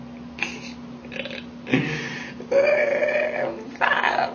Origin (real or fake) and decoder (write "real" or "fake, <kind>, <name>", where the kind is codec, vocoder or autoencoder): real